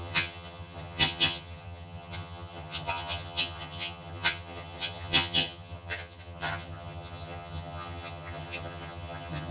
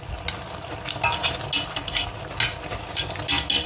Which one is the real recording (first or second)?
second